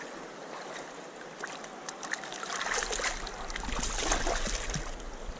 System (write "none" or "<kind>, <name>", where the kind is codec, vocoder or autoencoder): none